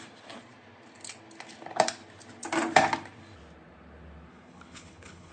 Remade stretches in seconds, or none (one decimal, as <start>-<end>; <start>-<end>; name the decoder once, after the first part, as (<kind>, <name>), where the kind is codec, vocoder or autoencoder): 4.3-5.3 (codec, HILCodec)